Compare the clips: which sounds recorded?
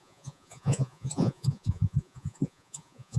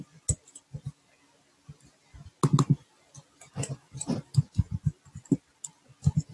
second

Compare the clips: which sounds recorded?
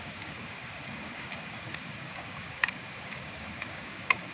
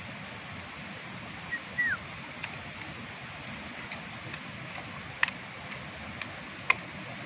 second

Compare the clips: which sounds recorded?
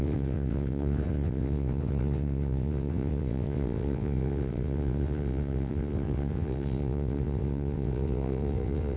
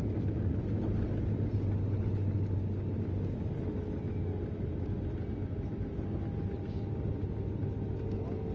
second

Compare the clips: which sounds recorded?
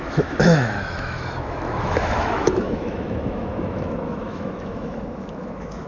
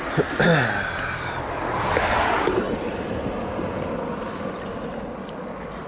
second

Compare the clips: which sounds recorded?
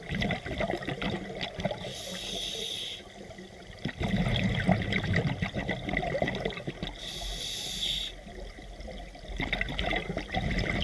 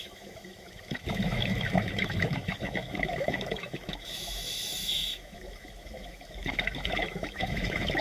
first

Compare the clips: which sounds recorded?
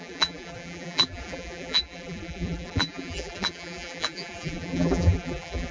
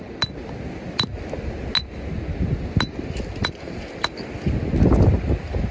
second